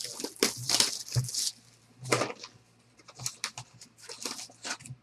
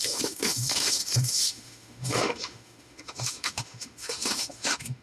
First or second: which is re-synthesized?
second